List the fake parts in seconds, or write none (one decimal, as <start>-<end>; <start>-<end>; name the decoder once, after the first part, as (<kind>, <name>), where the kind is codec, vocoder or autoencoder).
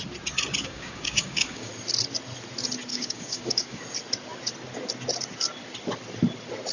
0.6-1.7 (codec, DAC); 2.9-3.8